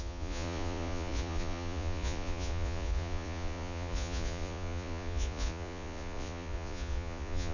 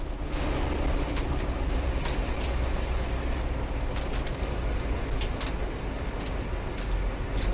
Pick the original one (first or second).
second